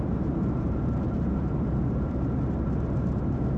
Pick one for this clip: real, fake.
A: fake